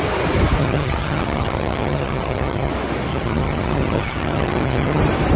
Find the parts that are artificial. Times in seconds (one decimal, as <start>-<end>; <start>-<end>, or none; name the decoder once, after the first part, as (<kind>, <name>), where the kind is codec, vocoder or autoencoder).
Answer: 0.6-2.7 (vocoder, HiFi-GAN); 3.1-5.0